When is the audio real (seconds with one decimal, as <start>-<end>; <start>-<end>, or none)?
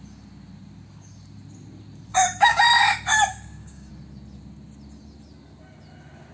0.0-2.1; 2.6-3.3; 3.9-6.3